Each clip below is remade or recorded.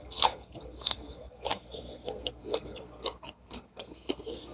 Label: remade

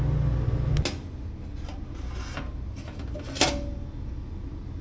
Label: recorded